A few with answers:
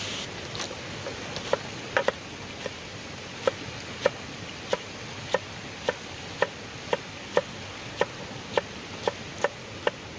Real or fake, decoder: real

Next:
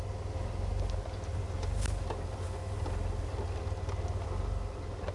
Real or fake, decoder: real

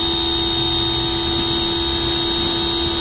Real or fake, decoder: real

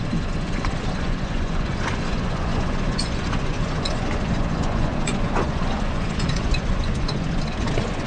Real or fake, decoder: fake, vocoder, Vocos